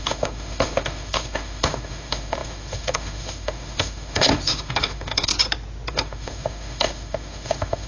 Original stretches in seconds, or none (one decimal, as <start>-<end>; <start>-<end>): 5.3-5.9